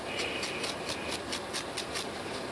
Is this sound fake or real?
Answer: fake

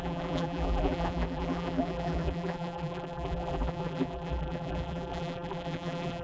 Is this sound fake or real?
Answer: fake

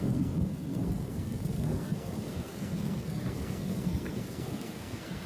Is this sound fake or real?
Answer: fake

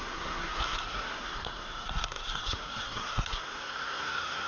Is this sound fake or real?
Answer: fake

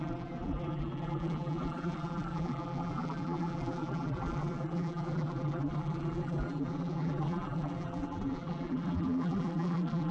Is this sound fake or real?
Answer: fake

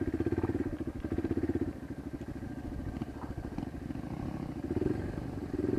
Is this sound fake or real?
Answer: real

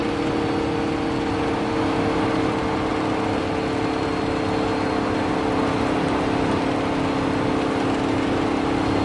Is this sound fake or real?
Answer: real